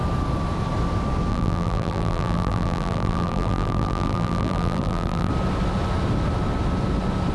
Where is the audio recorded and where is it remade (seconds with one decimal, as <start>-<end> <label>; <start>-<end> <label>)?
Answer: 0.0-1.3 recorded; 1.3-5.3 remade; 5.3-7.3 recorded